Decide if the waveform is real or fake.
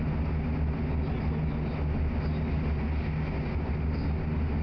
real